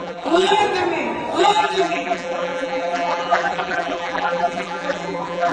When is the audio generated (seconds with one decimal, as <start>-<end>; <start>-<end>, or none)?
0.0-0.6; 1.4-5.5